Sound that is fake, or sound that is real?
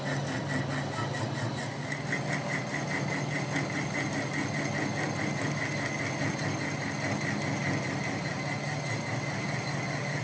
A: real